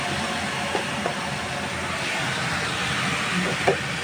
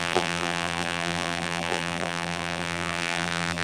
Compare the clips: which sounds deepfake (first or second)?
second